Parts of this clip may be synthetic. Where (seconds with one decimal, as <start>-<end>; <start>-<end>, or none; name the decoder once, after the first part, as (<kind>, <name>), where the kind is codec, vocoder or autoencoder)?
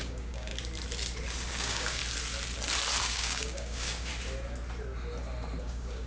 0.0-0.5 (codec, DAC); 1.5-2.0; 3.0-4.1; 5.6-6.1